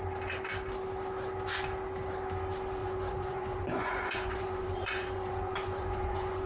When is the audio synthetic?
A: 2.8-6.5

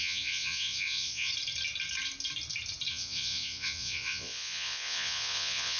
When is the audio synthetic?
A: 0.0-1.3; 2.9-5.8

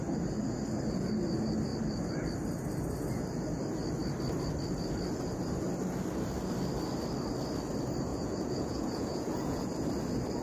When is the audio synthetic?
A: 8.1-9.7

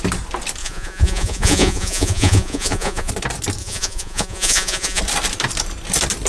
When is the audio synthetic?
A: 0.6-3.1; 3.6-5.0

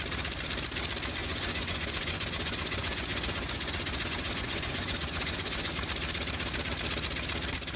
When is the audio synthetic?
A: 1.2-5.7

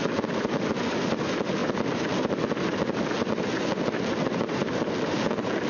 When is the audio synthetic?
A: none